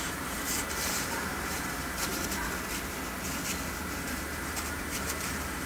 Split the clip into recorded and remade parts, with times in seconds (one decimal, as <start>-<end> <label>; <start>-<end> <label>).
0.0-2.1 remade; 2.1-4.0 recorded; 4.0-5.7 remade